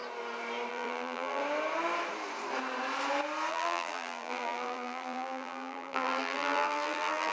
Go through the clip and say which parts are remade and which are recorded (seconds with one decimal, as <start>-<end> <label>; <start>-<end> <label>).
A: 0.0-0.7 recorded; 0.7-1.4 remade; 1.4-3.5 recorded; 3.5-7.3 remade